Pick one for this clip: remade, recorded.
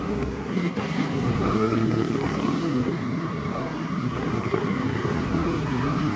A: remade